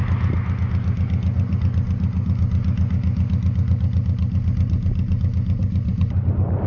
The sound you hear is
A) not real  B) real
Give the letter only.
B